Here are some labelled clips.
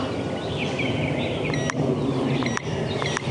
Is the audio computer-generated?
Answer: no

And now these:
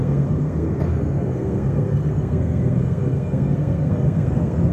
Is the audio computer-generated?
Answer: yes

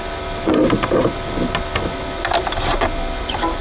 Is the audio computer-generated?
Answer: no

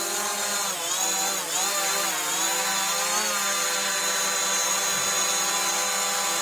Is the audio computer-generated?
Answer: no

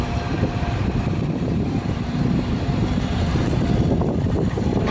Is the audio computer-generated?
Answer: yes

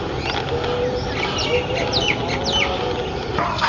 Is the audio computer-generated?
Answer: no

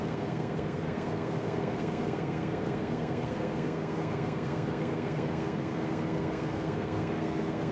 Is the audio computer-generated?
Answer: yes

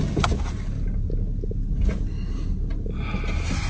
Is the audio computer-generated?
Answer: no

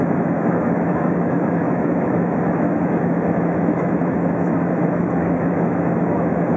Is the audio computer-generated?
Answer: yes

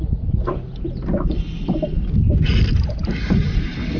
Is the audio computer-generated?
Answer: no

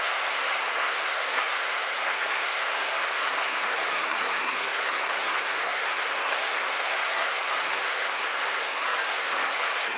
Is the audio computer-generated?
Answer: yes